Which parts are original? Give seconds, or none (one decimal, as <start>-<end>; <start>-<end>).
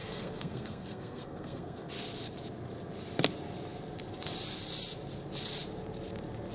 1.9-6.5